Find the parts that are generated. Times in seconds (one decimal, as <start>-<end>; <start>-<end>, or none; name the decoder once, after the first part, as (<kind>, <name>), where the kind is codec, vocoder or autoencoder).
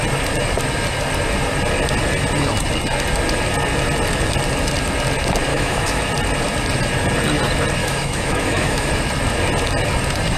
5.5-6.0 (autoencoder, DAC-VAE); 7.8-8.9